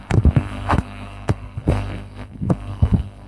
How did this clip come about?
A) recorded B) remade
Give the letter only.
B